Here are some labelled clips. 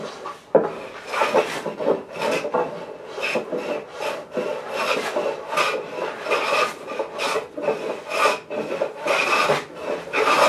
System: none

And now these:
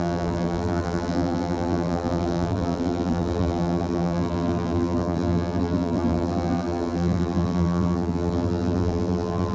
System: vocoder, BigVGAN v2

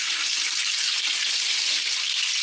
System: none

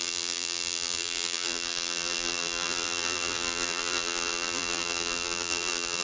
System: vocoder, BigVGAN v2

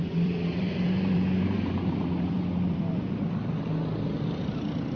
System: vocoder, BigVGAN v2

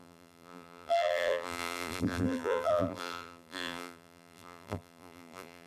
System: vocoder, BigVGAN v2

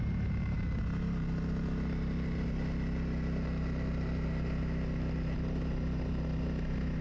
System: none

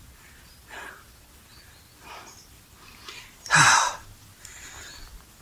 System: none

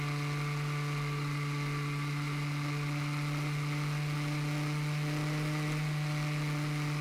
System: none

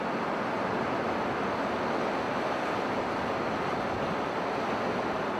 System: none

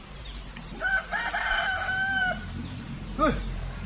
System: vocoder, BigVGAN v2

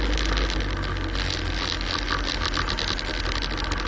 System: none